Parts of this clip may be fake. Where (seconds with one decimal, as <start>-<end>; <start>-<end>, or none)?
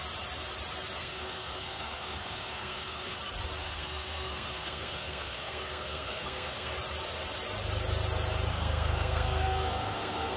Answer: 1.0-3.2; 3.6-6.7; 8.5-10.4